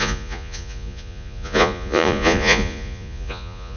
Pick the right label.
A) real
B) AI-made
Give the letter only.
B